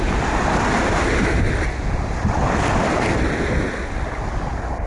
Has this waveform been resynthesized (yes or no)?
no